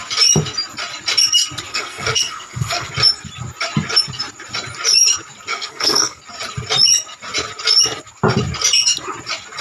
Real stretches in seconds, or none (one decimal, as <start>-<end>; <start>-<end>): 0.0-1.7; 2.9-5.5; 6.2-9.6